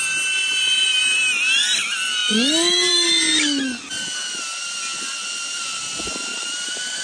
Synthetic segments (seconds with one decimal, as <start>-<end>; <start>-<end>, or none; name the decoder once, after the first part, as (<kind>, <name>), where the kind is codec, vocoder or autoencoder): 6.3-7.0 (vocoder, BigVGAN v2)